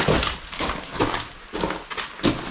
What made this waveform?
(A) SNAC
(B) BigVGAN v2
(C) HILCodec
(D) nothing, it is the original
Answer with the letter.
D